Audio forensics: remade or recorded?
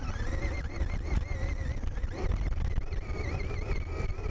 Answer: recorded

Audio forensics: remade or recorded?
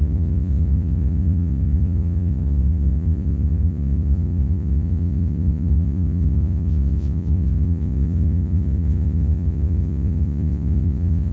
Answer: remade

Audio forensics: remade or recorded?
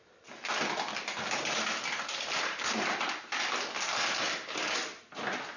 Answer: recorded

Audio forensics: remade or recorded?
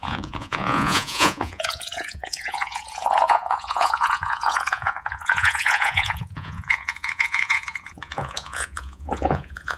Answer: remade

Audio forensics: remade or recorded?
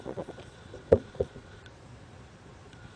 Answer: remade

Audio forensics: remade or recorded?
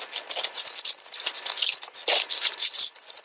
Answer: recorded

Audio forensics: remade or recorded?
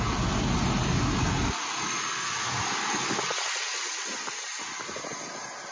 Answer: recorded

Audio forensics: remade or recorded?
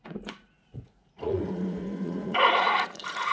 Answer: remade